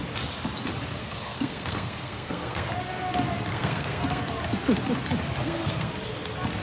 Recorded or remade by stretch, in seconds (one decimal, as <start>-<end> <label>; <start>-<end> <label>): 0.0-1.0 recorded; 1.0-2.7 remade; 2.7-3.5 recorded; 3.5-4.2 remade; 4.2-5.4 recorded; 5.4-5.9 remade; 5.9-6.6 recorded